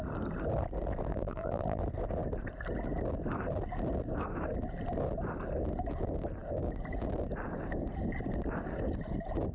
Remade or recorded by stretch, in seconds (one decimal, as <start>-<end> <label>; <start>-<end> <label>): 0.0-1.1 recorded; 1.1-1.8 remade; 1.8-9.5 recorded